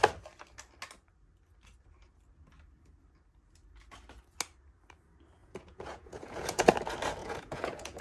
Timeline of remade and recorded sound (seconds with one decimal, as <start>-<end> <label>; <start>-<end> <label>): 0.0-5.4 recorded; 5.4-6.7 remade; 6.7-7.2 recorded; 7.2-8.0 remade